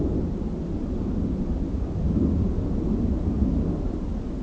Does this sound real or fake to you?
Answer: real